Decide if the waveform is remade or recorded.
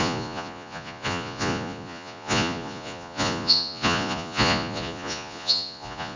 remade